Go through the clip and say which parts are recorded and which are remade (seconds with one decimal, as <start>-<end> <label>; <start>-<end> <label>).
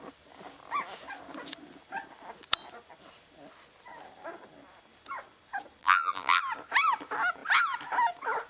0.0-5.8 recorded; 5.8-6.4 remade; 6.4-8.5 recorded